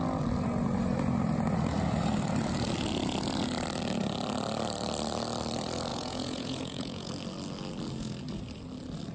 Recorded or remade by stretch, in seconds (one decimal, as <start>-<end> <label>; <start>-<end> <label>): 0.0-5.9 recorded; 5.9-7.1 remade; 7.1-9.1 recorded